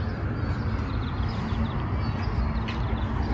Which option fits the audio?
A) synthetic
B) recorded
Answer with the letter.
B